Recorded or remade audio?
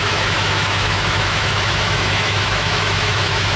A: remade